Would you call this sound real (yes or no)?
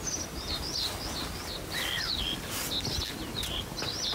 yes